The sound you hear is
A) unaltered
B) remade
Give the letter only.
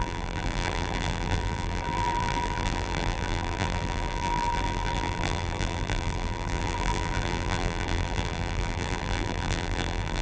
B